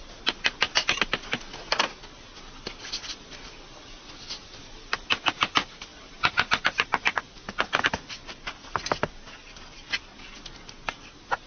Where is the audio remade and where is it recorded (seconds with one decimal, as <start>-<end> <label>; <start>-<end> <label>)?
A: 0.0-11.5 recorded